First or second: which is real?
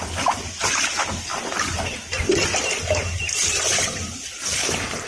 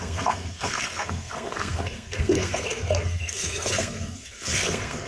first